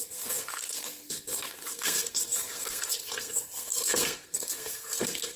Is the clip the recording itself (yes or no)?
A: no